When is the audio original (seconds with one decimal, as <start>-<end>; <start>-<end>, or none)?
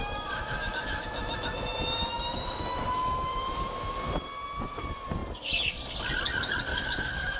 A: 4.1-6.7